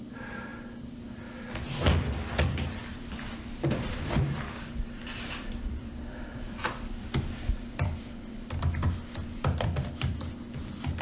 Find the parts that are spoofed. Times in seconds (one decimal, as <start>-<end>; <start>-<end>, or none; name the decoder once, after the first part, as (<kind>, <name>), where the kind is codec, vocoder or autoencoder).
0.0-0.5 (vocoder, BigVGAN v2); 2.7-11.0